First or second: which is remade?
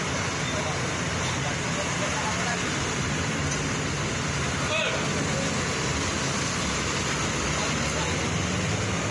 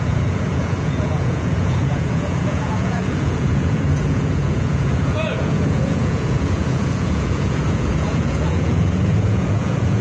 second